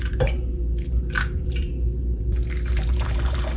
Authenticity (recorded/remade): remade